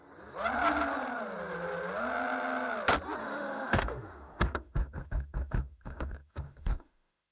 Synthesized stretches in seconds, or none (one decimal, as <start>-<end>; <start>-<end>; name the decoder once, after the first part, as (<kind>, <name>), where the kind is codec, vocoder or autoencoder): 3.2-7.3 (autoencoder, DAC-VAE)